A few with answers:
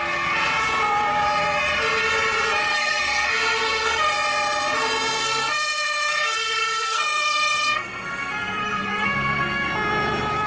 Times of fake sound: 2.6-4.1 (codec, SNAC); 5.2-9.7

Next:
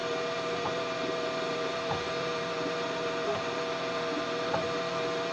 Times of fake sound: 0.0-5.3 (vocoder, BigVGAN v2)

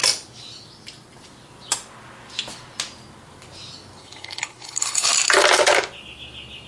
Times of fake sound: 4.0-5.1 (codec, HILCodec)

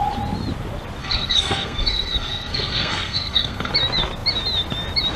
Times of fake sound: 1.0-3.7 (codec, SNAC)

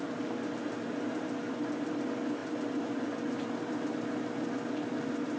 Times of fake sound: none

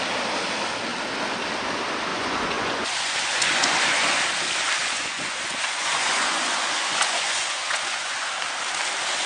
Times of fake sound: 2.1-4.2 (vocoder, Vocos); 4.8-8.3